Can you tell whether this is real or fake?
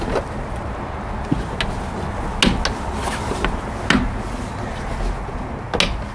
real